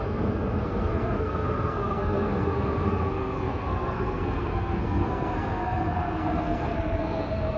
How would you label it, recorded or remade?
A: remade